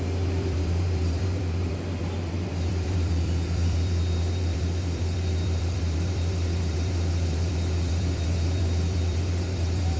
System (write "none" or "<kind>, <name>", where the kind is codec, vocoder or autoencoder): vocoder, BigVGAN v2